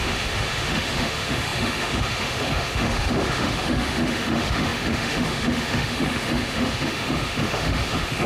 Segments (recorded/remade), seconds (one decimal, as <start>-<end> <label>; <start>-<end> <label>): 0.0-8.3 remade